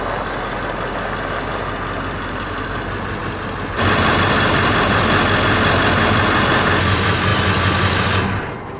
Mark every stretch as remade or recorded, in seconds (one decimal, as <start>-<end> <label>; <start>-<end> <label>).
0.0-8.8 recorded